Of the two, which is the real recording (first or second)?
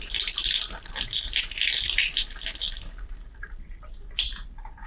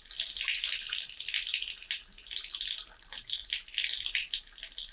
second